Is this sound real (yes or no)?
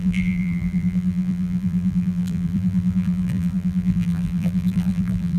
no